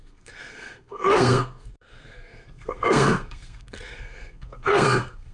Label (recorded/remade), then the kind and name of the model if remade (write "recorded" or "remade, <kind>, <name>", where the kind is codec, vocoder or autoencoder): remade, codec, SNAC